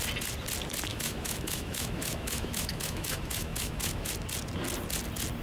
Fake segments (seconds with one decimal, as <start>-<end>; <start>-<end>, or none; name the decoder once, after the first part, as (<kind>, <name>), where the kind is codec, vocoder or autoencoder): 0.9-4.1 (autoencoder, DAC-VAE)